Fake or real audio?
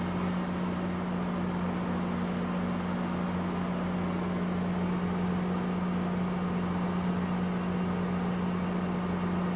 real